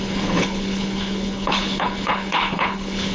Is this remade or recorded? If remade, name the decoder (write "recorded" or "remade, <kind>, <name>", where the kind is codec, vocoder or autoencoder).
remade, codec, HILCodec